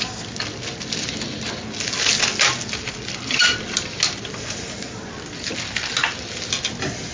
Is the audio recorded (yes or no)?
yes